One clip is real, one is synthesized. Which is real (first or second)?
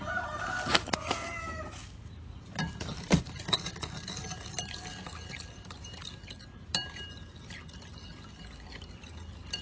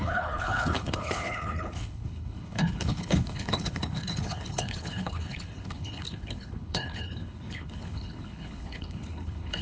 first